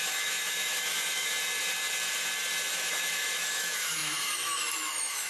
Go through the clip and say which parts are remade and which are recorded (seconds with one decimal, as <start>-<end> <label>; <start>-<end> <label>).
0.0-1.3 remade; 1.3-2.7 recorded; 2.7-5.3 remade